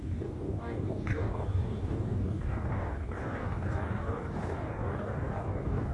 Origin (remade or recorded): remade